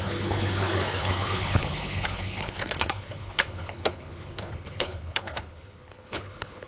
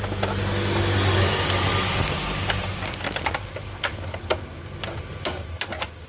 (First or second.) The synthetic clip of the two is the first